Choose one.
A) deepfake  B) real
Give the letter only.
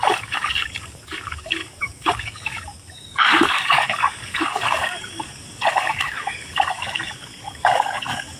A